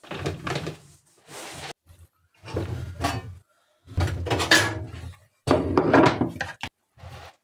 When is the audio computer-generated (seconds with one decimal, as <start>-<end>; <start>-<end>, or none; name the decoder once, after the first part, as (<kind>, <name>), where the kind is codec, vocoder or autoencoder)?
none